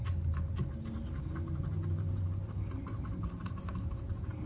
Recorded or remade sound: remade